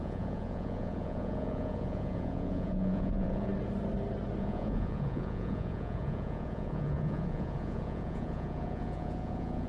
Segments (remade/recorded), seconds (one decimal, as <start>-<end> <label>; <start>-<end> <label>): 0.0-3.5 remade; 3.5-4.4 recorded; 4.4-9.7 remade